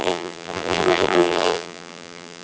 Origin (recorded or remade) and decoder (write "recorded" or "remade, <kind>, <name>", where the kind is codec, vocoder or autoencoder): remade, vocoder, BigVGAN v2